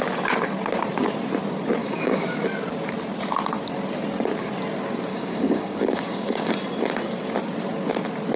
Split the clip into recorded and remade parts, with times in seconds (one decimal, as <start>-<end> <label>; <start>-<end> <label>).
0.0-1.8 recorded; 1.8-2.4 remade; 2.4-5.1 recorded; 5.1-6.5 remade; 6.5-8.4 recorded